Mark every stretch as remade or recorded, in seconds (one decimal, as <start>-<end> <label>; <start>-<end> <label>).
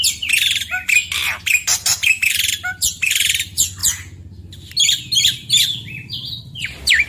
0.0-3.8 remade; 3.8-5.6 recorded; 5.6-7.1 remade